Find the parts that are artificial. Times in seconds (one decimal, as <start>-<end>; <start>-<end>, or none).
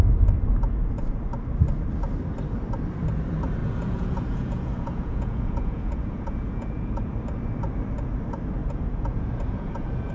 3.6-7.1; 8.6-10.1